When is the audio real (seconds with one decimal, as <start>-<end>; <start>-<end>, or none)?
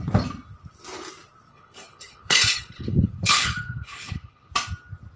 0.0-1.5; 4.5-5.2